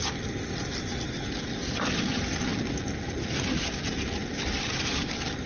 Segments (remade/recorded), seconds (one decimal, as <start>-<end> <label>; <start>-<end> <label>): 0.0-4.2 recorded; 4.2-4.7 remade; 4.7-5.5 recorded